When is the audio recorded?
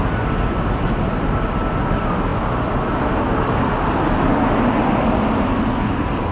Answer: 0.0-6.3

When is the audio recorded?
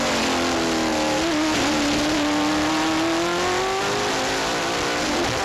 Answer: 0.0-5.4